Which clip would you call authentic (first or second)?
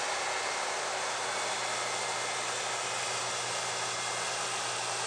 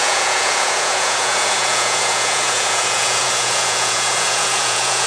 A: first